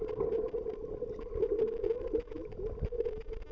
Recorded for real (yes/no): yes